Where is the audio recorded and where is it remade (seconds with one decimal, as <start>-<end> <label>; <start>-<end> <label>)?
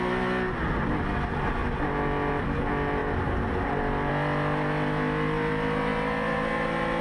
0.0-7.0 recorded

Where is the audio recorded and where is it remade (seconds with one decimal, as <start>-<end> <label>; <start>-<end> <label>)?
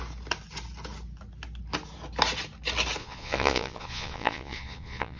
0.0-3.0 recorded; 3.0-5.2 remade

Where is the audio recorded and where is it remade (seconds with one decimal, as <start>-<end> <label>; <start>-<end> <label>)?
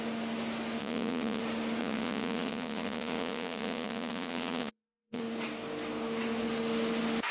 0.0-0.8 recorded; 0.8-1.4 remade; 1.4-1.8 recorded; 1.8-5.2 remade; 5.2-7.3 recorded